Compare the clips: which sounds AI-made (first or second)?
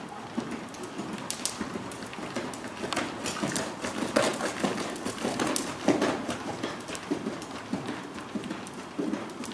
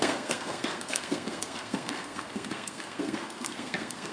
second